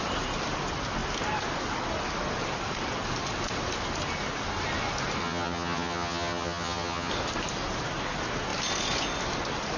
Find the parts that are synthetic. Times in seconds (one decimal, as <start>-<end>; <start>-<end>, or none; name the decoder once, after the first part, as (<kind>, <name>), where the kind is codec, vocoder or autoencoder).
5.2-7.1 (vocoder, HiFi-GAN)